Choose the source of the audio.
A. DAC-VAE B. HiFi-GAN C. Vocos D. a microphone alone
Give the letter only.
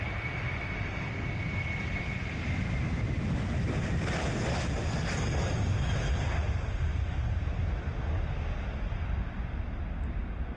D